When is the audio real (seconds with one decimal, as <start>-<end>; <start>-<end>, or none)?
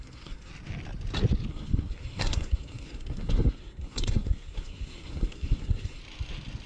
0.5-1.5; 6.0-6.7